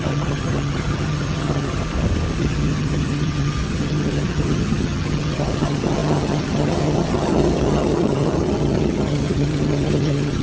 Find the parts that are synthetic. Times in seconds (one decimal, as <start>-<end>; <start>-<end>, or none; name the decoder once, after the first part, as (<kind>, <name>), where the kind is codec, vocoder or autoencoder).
0.0-1.8 (vocoder, HiFi-GAN); 2.4-10.4